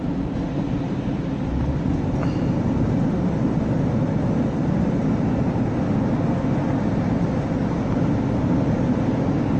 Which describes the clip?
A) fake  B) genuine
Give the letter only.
B